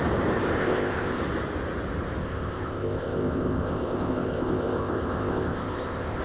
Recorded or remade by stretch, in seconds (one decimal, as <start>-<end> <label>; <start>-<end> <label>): 0.0-0.6 recorded; 0.6-1.2 remade; 1.2-2.2 recorded; 2.2-6.2 remade